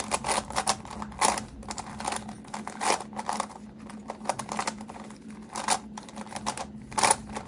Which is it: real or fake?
real